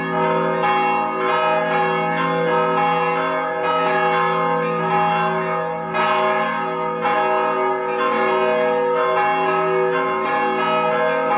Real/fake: real